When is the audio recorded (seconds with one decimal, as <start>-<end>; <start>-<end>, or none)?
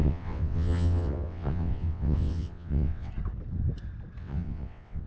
3.1-4.2